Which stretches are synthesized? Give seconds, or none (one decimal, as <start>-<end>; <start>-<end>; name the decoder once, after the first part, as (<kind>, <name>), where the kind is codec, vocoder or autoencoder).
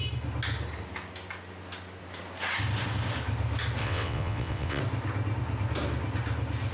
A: 3.8-4.8 (vocoder, WaveNeXt)